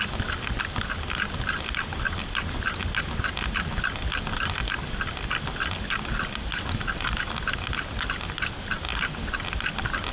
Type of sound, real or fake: real